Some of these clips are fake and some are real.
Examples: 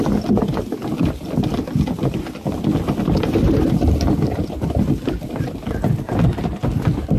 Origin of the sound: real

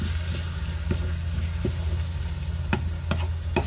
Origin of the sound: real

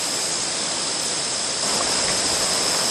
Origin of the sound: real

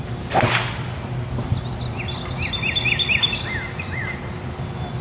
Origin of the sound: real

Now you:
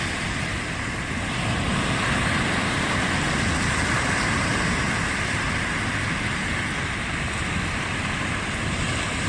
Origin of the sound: real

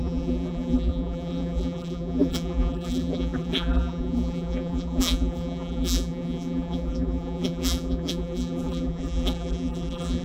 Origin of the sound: fake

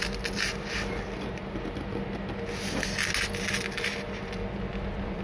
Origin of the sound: real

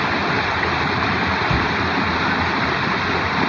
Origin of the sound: real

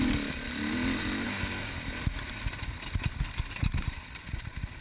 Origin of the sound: real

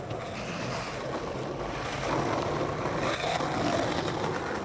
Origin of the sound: real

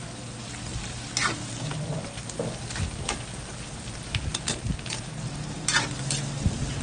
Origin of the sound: real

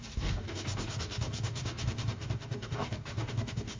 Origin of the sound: fake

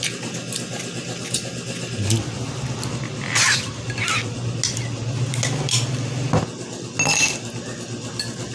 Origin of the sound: real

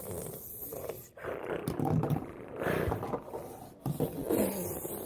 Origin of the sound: real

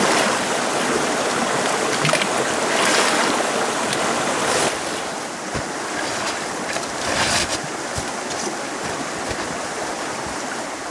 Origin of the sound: real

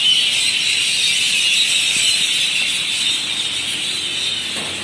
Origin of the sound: real